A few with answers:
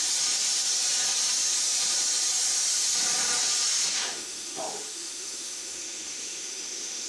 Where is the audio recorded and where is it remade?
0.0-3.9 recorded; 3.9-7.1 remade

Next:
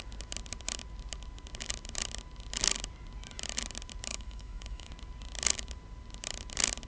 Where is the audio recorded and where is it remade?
0.0-4.1 recorded; 4.1-4.9 remade; 4.9-6.9 recorded

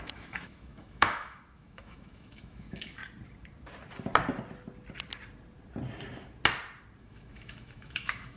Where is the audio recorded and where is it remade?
0.0-3.0 remade; 3.0-7.0 recorded; 7.0-8.4 remade

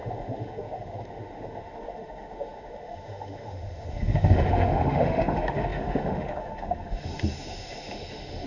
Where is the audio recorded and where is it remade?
0.0-8.5 remade

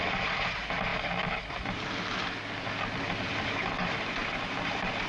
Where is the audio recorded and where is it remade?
0.0-5.1 recorded

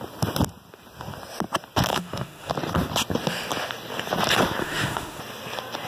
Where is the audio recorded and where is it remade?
0.0-1.9 recorded; 1.9-2.5 remade; 2.5-4.6 recorded; 4.6-5.2 remade; 5.2-5.9 recorded

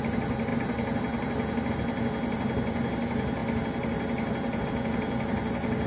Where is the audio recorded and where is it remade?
0.0-5.9 recorded

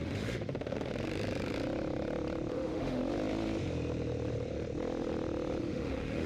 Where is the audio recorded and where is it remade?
0.0-0.9 remade; 0.9-2.5 recorded; 2.5-3.0 remade; 3.0-5.6 recorded; 5.6-6.3 remade